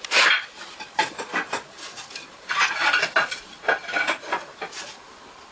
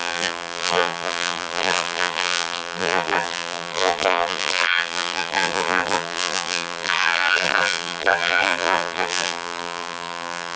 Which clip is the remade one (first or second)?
second